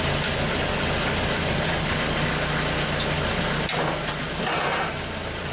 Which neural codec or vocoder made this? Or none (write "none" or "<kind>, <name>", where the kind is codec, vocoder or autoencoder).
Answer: none